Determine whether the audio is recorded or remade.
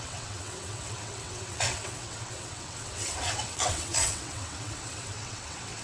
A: remade